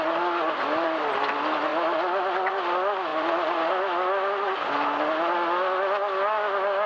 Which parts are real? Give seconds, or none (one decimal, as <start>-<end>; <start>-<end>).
0.0-6.9